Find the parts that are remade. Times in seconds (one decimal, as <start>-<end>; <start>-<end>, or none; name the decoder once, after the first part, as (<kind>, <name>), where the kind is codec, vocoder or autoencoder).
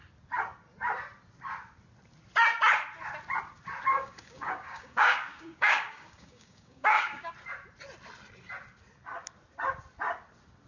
3.9-7.3 (codec, DAC)